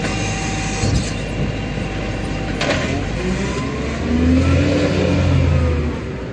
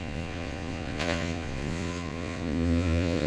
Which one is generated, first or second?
second